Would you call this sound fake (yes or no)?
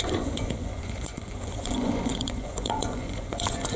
yes